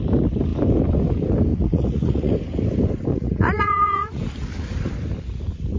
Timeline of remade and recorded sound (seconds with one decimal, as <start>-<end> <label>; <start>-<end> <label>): 0.0-1.5 recorded; 1.5-2.3 remade; 2.3-3.1 recorded; 3.1-4.2 remade; 4.2-5.8 recorded